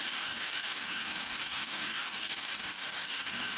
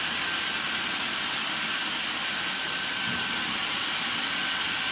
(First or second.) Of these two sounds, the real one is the second